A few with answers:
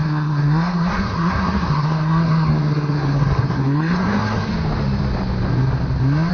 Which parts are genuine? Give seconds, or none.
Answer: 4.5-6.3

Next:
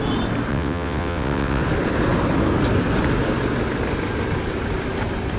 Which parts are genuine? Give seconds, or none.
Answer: 0.0-0.5; 1.6-5.4

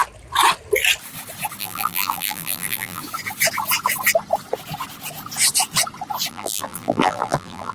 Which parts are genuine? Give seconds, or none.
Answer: 0.0-1.6; 3.0-6.3

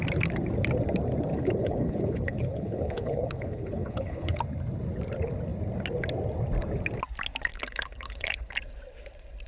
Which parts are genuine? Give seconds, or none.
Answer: 0.0-1.3; 4.4-7.5; 8.5-9.5

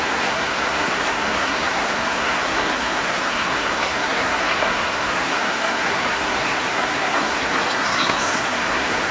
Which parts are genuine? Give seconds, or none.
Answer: none

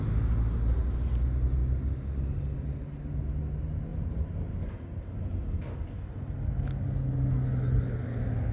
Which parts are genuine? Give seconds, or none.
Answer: 0.0-8.5